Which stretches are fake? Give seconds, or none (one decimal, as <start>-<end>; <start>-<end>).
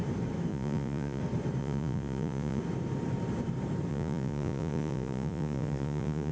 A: 0.5-1.2; 1.6-2.6; 3.9-6.3